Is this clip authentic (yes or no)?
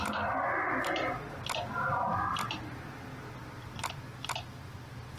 yes